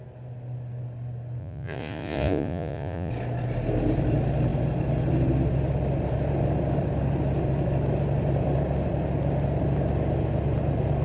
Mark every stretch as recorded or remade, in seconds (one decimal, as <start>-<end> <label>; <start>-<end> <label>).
0.0-1.4 recorded; 1.4-3.1 remade; 3.1-11.0 recorded